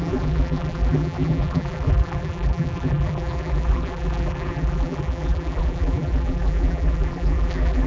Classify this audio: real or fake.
fake